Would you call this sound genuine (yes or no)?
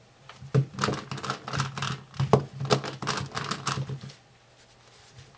yes